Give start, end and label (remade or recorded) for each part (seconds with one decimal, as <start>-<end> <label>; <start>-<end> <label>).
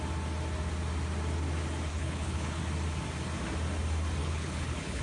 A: 0.0-1.9 recorded; 1.9-2.6 remade; 2.6-4.2 recorded; 4.2-5.0 remade